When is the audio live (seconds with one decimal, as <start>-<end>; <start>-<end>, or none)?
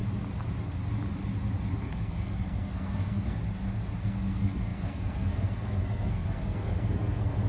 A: 0.0-1.8; 3.4-4.0